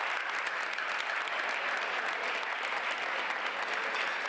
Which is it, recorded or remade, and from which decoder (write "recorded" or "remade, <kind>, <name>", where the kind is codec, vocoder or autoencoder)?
recorded